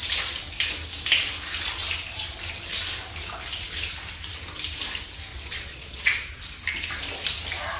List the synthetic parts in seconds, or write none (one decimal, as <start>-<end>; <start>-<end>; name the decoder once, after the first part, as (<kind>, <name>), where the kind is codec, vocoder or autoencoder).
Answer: 5.3-6.4 (vocoder, Vocos)